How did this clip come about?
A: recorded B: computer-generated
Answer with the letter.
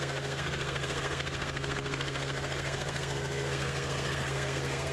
B